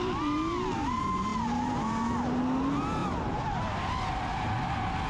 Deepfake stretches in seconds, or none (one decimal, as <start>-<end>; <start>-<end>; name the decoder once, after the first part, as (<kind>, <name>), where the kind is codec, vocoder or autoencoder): 3.0-4.1 (vocoder, BigVGAN v2)